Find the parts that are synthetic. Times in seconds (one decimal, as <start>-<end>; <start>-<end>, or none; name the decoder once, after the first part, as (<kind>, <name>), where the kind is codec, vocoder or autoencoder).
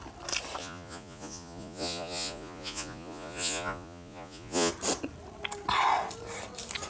0.6-4.7 (vocoder, Vocos)